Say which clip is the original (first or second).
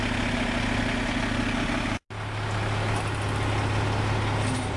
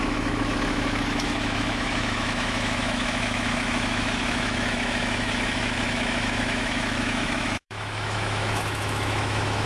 first